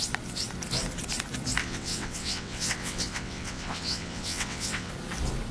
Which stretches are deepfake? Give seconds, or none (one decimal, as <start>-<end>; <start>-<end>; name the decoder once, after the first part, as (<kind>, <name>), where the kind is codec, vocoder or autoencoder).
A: 1.6-4.9 (vocoder, WaveNeXt)

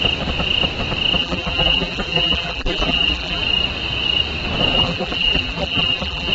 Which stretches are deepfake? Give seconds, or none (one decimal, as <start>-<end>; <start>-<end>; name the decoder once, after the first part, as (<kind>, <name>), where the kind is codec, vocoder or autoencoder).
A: 1.2-3.4 (vocoder, BigVGAN v2); 4.7-6.3

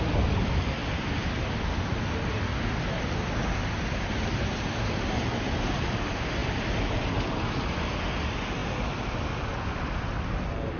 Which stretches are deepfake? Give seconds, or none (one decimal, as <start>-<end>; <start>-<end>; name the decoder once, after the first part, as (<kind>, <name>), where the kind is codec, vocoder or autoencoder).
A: none

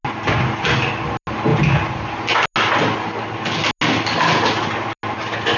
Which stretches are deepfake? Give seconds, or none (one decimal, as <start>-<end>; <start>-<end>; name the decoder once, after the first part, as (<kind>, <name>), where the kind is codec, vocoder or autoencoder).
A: none